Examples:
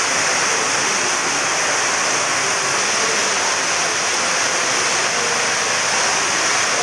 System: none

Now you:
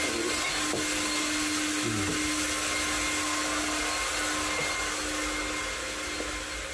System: none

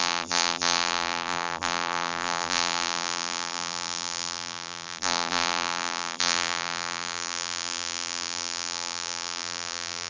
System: vocoder, BigVGAN v2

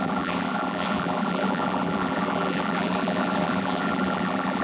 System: vocoder, BigVGAN v2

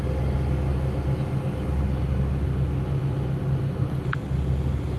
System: none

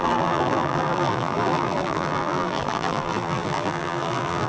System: vocoder, BigVGAN v2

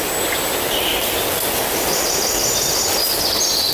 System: none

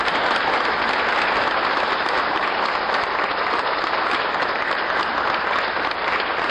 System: none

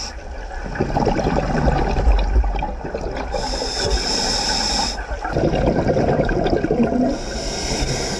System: none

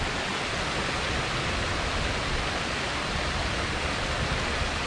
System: none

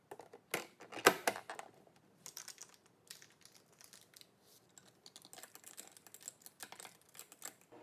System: none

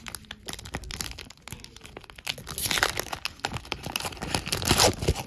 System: none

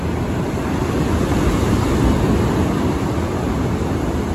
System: none